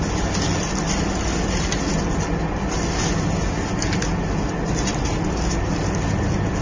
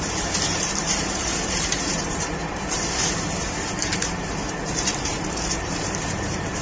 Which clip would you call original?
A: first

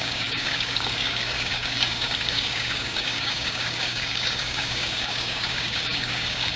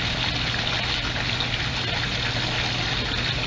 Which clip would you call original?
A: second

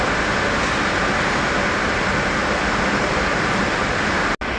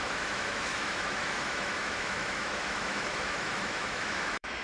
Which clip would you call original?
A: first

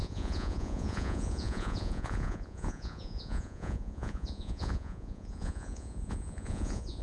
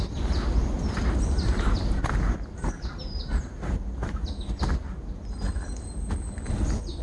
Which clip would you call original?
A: second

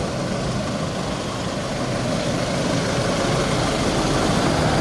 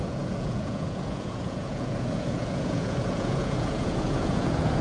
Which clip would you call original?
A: first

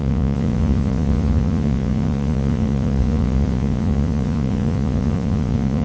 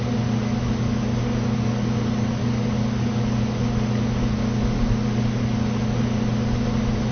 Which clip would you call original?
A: second